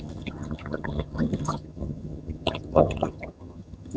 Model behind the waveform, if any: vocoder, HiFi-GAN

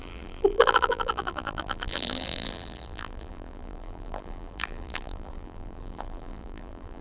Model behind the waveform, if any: vocoder, BigVGAN v2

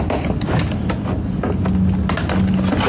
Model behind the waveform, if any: none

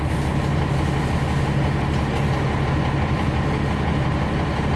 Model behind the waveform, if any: none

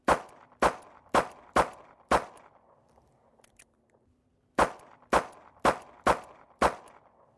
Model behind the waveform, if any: vocoder, BigVGAN v2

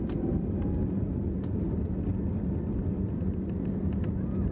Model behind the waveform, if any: none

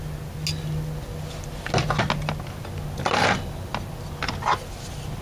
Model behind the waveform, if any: none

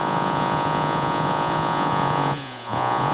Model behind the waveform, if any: vocoder, Vocos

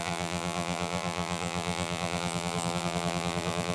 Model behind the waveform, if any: vocoder, BigVGAN v2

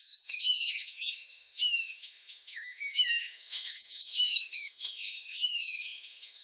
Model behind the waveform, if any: autoencoder, DAC-VAE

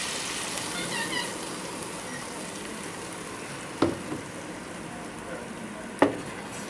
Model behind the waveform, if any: none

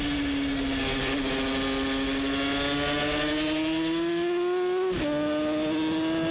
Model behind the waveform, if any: none